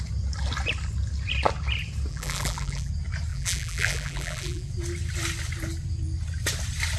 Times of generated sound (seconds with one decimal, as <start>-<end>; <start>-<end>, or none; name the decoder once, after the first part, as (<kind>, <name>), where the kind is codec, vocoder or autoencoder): 2.1-2.9 (vocoder, BigVGAN v2); 3.3-4.7